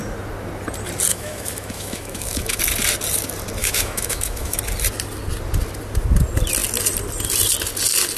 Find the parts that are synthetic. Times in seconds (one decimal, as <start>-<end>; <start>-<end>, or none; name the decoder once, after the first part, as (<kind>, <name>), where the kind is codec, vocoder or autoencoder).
1.1-2.6 (autoencoder, DAC-VAE); 3.6-4.6